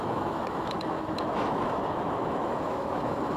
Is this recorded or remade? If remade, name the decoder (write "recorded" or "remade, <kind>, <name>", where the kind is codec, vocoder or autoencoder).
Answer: remade, autoencoder, DAC-VAE